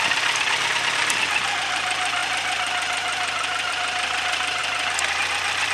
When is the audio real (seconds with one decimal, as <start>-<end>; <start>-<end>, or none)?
0.0-5.7